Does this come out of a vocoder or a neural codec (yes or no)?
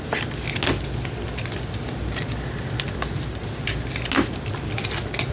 no